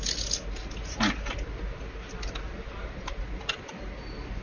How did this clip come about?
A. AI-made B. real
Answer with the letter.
B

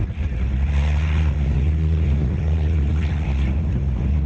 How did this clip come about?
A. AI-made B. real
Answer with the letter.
A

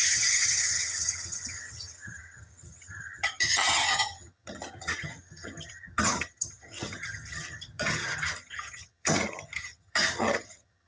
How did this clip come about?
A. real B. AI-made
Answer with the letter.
B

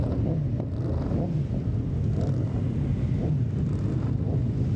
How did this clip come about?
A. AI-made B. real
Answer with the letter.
B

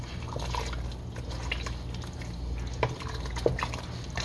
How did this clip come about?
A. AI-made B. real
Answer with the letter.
B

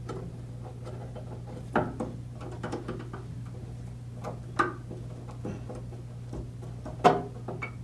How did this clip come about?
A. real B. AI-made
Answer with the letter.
A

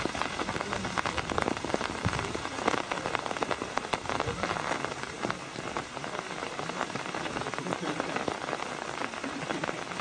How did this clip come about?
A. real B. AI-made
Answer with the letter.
B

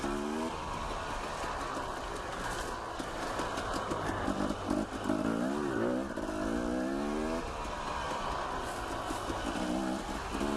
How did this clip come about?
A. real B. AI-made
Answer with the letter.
A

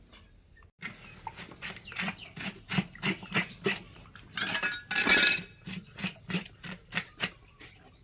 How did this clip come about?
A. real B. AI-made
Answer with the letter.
A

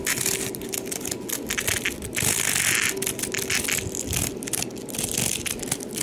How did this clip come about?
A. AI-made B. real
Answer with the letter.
B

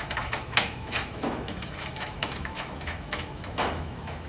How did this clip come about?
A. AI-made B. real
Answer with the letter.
A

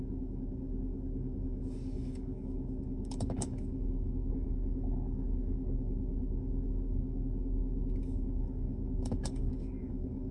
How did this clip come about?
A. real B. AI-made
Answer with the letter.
B